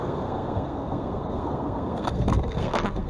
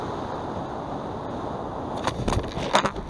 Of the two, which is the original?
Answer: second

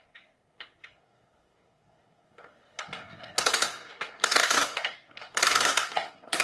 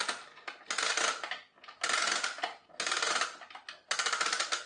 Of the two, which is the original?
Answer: second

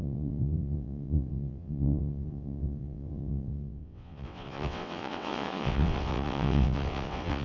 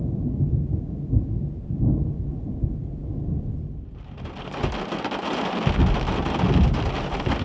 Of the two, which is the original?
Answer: second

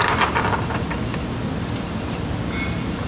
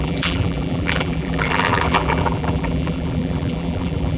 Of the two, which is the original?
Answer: first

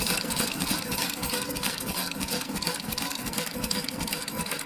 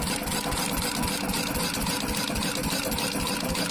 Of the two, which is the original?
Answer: second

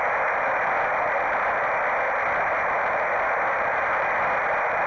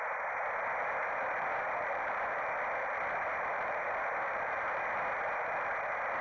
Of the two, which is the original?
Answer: first